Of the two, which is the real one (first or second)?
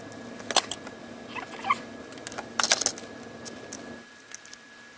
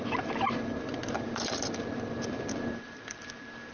first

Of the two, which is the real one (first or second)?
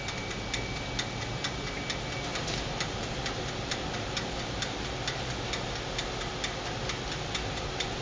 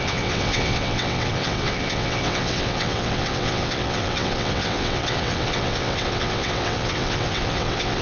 first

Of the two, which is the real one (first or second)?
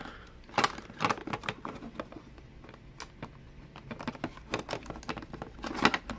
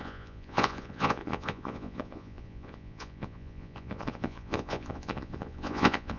first